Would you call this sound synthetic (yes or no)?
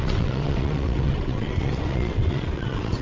yes